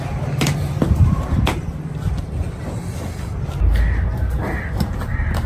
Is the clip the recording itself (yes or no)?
yes